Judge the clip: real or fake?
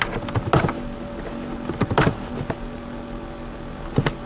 real